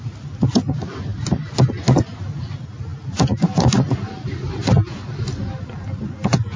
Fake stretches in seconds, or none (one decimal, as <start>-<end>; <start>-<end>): none